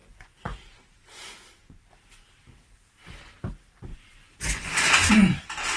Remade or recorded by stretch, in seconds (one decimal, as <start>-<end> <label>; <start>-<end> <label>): 0.0-1.8 remade; 1.8-3.9 recorded; 3.9-5.1 remade; 5.1-5.8 recorded